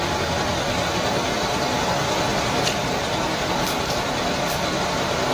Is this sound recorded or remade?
recorded